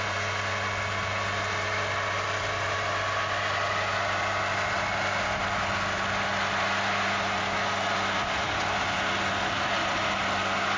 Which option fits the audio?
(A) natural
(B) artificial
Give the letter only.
A